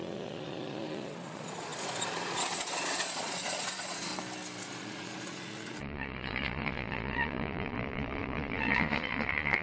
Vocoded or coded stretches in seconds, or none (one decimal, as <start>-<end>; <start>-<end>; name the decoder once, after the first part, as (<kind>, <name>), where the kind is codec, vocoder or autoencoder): 0.0-4.1 (vocoder, Vocos); 4.6-9.6